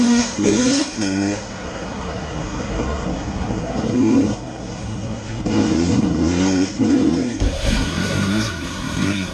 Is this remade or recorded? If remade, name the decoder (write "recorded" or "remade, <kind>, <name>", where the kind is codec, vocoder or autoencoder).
remade, codec, SNAC